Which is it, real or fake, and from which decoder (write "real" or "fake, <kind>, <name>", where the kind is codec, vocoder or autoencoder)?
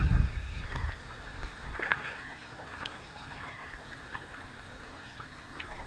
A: fake, codec, SNAC